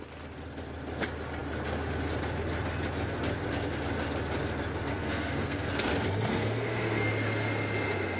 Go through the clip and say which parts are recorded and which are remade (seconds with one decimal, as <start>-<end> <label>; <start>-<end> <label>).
0.0-4.9 recorded; 4.9-5.7 remade; 5.7-6.3 recorded; 6.3-7.1 remade; 7.1-8.2 recorded

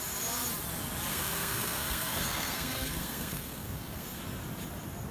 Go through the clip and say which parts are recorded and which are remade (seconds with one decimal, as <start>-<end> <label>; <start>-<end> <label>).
0.0-1.1 recorded; 1.1-4.2 remade; 4.2-5.1 recorded